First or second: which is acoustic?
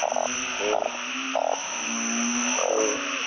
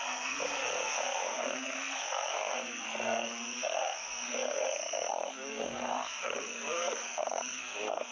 first